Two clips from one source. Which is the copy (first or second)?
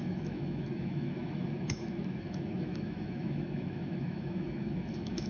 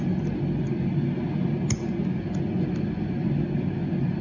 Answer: first